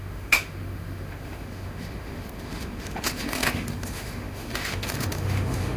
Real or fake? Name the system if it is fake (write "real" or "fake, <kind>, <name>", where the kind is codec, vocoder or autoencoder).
fake, autoencoder, DAC-VAE